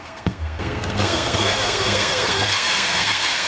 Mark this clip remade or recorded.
remade